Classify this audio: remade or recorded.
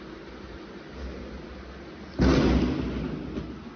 recorded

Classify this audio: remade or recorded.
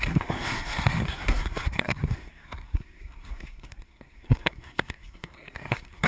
remade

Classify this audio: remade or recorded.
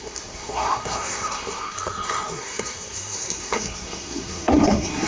remade